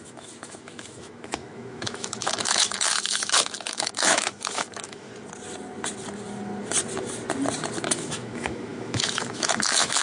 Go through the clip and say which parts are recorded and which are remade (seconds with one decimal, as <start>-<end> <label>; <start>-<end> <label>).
0.0-5.1 remade; 5.1-7.9 recorded; 7.9-10.0 remade